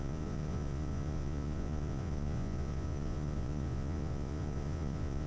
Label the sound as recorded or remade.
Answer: remade